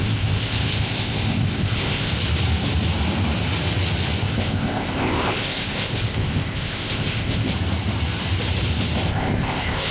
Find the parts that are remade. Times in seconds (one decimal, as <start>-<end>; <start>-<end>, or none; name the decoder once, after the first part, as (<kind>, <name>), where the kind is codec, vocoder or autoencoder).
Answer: 0.0-2.1 (codec, ZipCodec); 4.2-7.5; 9.1-9.9